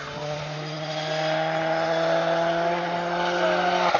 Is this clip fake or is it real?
real